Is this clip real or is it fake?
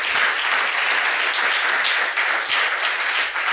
real